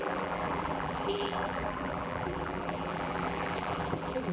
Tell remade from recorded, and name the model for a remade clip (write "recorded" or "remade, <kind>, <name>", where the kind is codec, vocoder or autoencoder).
remade, vocoder, BigVGAN v2